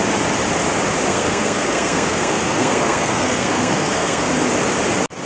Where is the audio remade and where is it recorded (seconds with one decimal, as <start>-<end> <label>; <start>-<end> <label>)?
0.0-1.1 recorded; 1.1-4.3 remade; 4.3-5.3 recorded